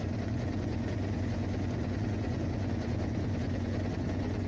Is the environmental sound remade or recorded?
remade